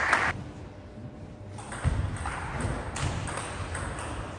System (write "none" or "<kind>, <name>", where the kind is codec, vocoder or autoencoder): none